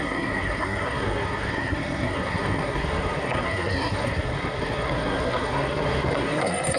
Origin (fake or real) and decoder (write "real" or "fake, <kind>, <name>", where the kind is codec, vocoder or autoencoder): fake, codec, SNAC